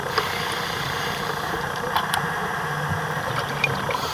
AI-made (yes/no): yes